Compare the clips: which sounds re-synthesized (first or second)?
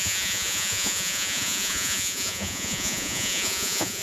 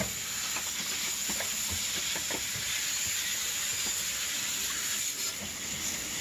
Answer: first